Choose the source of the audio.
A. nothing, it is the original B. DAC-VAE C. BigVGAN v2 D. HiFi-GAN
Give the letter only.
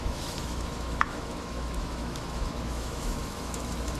B